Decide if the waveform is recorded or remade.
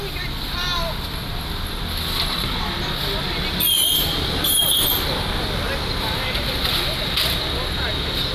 recorded